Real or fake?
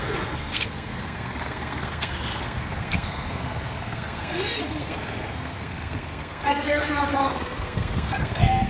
fake